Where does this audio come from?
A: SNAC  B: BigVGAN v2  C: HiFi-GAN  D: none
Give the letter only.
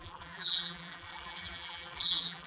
B